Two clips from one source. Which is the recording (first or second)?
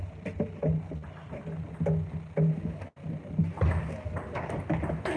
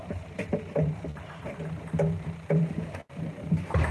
first